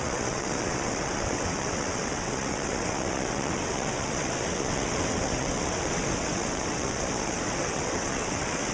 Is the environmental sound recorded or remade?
remade